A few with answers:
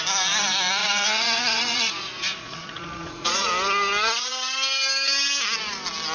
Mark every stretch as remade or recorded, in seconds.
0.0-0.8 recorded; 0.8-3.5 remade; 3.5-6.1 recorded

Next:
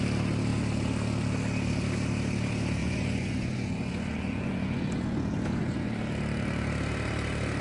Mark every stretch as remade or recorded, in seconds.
0.0-2.8 recorded; 2.8-5.9 remade; 5.9-7.6 recorded

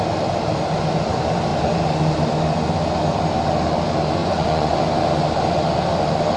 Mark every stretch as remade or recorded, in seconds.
0.0-4.2 recorded; 4.2-4.8 remade; 4.8-6.4 recorded

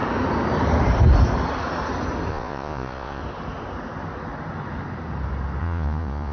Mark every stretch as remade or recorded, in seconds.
0.0-2.3 recorded; 2.3-3.2 remade; 3.2-5.6 recorded; 5.6-6.3 remade

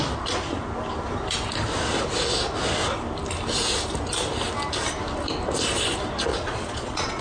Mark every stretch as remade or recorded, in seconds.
0.0-6.3 recorded; 6.3-7.2 remade